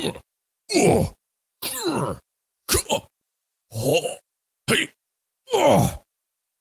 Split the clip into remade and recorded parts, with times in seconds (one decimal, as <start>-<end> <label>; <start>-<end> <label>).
0.0-0.8 recorded; 0.8-2.9 remade; 2.9-3.9 recorded; 3.9-4.5 remade; 4.5-6.6 recorded